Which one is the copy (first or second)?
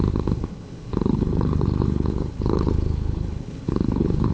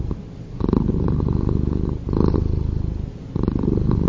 first